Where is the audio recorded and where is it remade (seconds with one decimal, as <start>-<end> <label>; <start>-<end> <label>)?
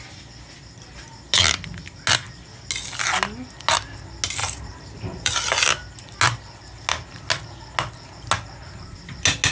0.0-4.4 recorded; 4.4-5.3 remade; 5.3-9.5 recorded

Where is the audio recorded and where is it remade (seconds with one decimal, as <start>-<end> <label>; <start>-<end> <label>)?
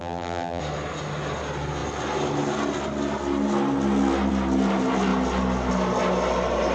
0.0-0.6 remade; 0.6-6.7 recorded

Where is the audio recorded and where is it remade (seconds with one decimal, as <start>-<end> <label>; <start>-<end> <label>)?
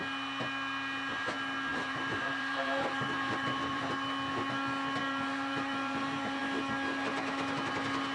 0.0-1.7 recorded; 1.7-3.9 remade; 3.9-5.0 recorded; 5.0-6.4 remade; 6.4-8.1 recorded